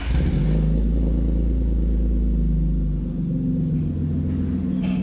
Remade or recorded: recorded